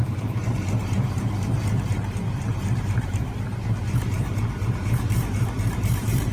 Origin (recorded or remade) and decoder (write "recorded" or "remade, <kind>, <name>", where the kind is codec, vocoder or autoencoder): remade, vocoder, BigVGAN v2